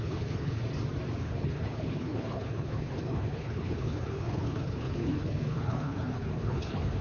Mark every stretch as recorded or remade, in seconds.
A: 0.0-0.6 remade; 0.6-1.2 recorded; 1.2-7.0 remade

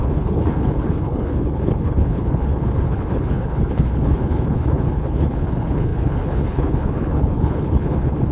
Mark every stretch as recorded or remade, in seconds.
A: 0.0-8.3 remade